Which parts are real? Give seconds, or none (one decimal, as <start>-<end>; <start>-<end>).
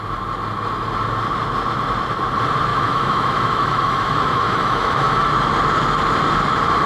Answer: 0.0-2.7; 5.3-6.9